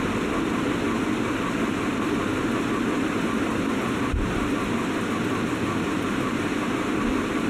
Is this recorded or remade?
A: recorded